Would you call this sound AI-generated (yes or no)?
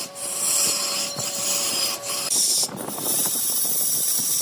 yes